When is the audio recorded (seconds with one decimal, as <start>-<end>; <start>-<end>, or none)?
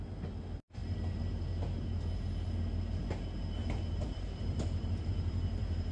0.0-3.6